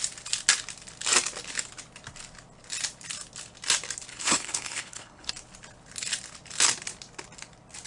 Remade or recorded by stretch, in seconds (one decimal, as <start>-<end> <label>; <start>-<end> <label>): 0.0-4.1 recorded; 4.1-5.3 remade; 5.3-7.9 recorded